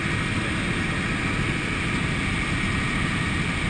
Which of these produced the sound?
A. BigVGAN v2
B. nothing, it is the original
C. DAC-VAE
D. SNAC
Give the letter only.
B